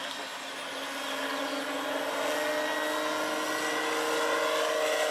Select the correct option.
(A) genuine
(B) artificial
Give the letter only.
A